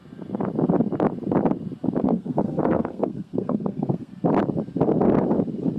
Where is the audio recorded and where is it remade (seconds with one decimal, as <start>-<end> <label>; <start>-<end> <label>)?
0.0-2.0 recorded; 2.0-4.1 remade; 4.1-5.8 recorded